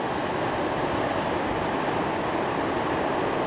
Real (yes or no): no